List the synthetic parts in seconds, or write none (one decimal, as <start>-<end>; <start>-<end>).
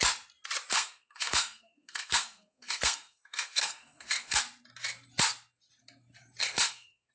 0.7-4.4; 6.4-7.1